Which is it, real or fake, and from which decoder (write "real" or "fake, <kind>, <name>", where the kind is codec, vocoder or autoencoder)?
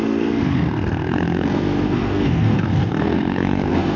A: fake, codec, SNAC